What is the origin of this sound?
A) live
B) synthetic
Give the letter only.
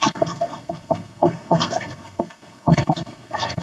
B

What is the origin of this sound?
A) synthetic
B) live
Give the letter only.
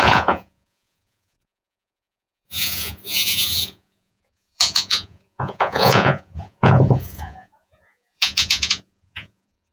A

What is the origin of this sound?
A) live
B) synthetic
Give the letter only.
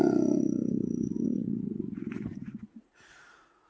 B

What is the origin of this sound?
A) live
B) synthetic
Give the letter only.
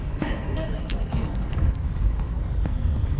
B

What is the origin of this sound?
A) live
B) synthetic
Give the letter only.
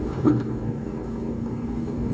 B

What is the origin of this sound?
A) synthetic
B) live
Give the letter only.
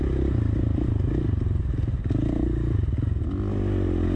B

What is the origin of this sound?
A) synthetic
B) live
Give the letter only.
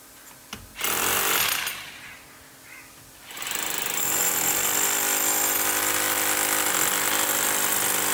B